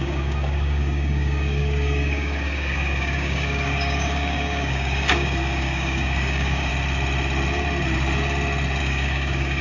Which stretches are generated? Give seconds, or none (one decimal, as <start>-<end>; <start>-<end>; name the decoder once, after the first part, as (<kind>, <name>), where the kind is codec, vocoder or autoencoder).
0.0-6.7 (codec, DAC); 8.8-9.6